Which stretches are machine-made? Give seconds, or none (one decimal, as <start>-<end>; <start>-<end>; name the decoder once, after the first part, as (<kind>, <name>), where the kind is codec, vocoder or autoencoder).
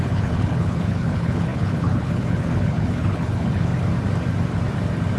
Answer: 0.0-3.7 (codec, HILCodec)